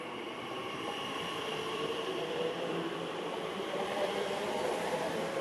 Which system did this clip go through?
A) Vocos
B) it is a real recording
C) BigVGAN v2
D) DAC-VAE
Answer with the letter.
C